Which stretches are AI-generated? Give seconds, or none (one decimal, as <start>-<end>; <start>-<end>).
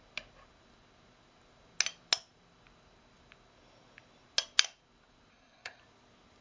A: 5.3-5.8